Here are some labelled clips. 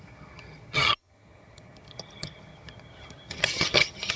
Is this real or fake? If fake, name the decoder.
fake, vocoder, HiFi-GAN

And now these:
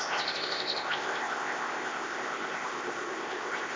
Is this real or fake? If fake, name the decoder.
fake, codec, ZipCodec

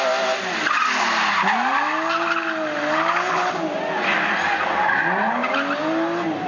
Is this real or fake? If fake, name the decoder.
real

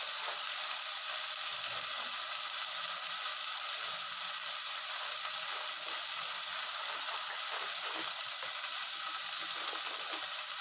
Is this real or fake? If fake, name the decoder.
real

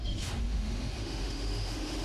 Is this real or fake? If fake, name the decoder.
fake, autoencoder, DAC-VAE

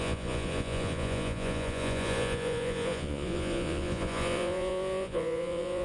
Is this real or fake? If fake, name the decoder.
fake, vocoder, Vocos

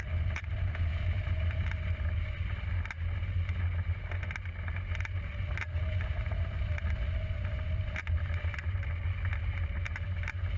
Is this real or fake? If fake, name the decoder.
real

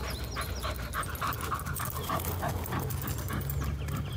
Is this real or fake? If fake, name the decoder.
real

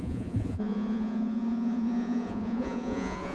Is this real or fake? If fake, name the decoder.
fake, vocoder, Vocos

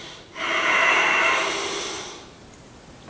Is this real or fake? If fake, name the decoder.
real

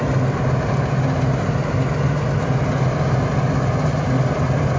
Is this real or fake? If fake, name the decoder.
real